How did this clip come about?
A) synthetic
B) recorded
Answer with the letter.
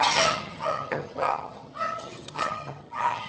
A